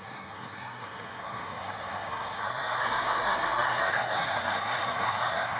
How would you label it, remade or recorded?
remade